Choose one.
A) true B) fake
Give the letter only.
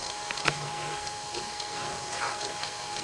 B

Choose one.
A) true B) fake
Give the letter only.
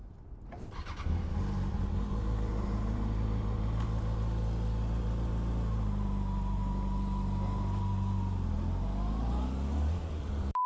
A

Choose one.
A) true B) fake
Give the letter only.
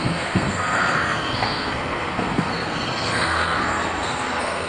B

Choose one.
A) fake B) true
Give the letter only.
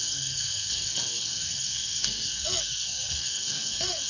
A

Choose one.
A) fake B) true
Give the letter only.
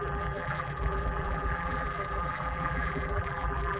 A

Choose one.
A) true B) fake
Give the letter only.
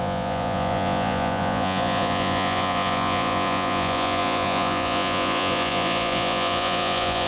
B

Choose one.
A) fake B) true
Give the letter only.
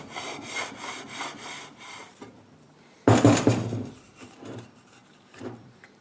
A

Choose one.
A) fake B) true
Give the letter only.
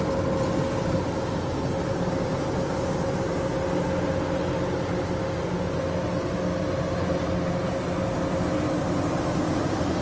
B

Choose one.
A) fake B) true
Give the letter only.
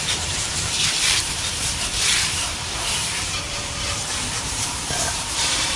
A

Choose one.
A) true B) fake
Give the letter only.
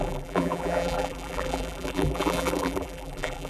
B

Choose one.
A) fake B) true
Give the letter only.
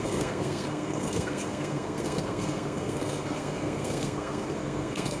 A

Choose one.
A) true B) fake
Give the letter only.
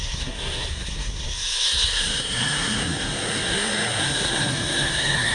B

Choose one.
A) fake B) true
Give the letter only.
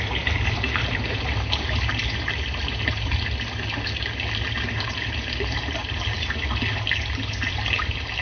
B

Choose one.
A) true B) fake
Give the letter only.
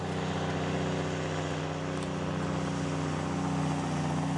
A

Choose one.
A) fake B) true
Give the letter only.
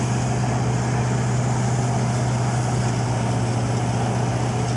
B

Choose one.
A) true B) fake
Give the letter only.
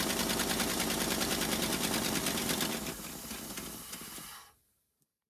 B